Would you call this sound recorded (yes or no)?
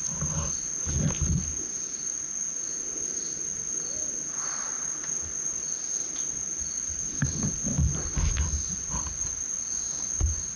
yes